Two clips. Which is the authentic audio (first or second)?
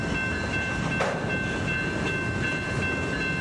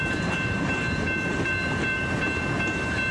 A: first